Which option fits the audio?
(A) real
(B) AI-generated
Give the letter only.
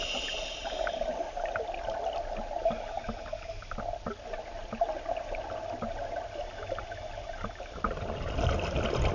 A